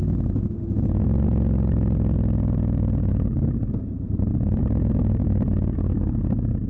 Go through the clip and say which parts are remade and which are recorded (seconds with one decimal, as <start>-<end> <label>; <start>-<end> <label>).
0.0-3.1 recorded; 3.1-4.6 remade; 4.6-6.7 recorded